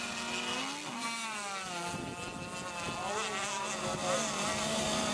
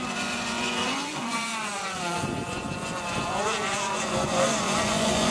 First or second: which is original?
first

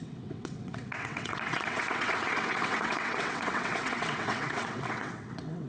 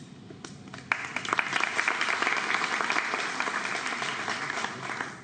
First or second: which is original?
second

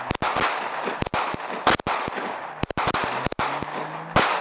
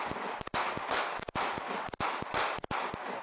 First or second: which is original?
first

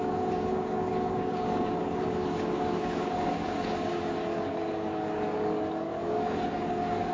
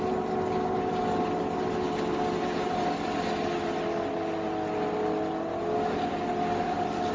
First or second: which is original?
second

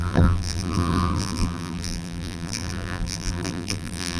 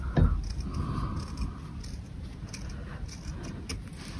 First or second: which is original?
second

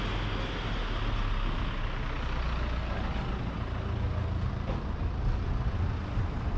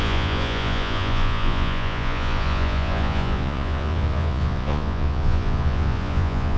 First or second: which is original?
first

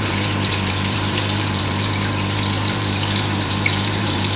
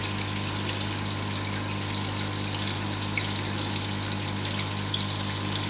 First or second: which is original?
second